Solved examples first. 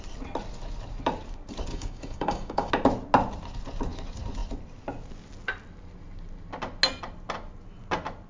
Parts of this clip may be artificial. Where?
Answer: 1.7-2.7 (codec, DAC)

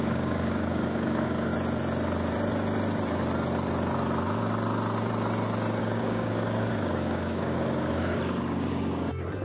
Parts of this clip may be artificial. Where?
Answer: 0.0-1.5 (codec, DAC); 5.8-9.4